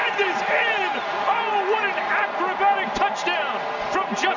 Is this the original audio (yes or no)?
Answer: yes